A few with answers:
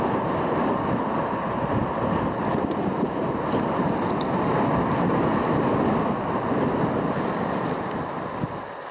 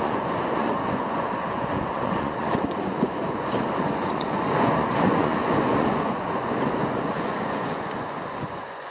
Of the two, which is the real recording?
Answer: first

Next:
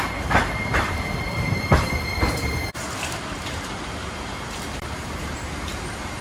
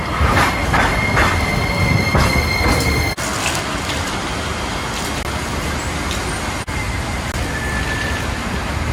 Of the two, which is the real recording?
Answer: second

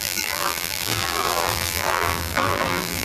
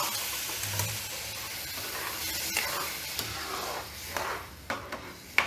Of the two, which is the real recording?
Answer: second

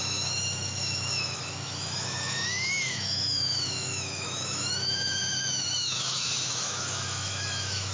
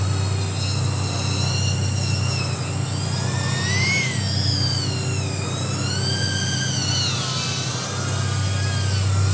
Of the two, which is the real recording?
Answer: second